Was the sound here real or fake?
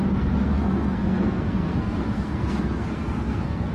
fake